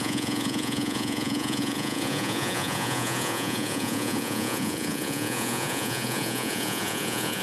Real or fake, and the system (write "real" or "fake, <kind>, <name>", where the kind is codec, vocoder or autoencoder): fake, vocoder, Vocos